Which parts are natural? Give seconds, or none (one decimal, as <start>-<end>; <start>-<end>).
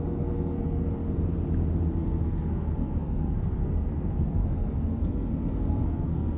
0.9-2.0